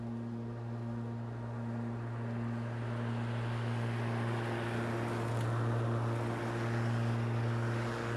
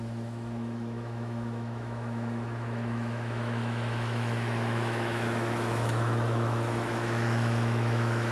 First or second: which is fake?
second